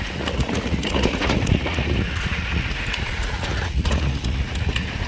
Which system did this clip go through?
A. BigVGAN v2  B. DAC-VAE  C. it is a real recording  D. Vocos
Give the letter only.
D